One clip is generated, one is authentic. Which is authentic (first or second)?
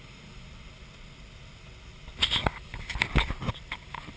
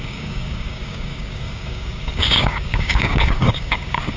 first